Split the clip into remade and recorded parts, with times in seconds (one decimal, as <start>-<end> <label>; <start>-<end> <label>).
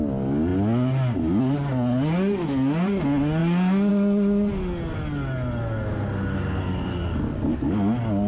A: 0.0-8.3 recorded